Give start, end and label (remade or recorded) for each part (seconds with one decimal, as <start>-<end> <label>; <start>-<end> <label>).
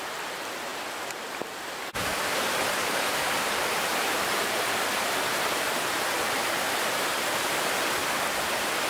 0.0-0.7 recorded; 0.7-1.3 remade; 1.3-2.1 recorded; 2.1-6.0 remade; 6.0-8.9 recorded